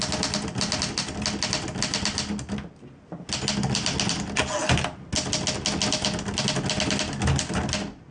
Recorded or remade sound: recorded